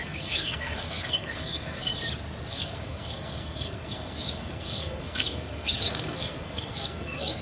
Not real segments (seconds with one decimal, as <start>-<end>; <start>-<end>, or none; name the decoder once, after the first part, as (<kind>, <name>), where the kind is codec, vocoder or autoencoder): 0.0-1.9 (codec, SNAC); 2.5-7.4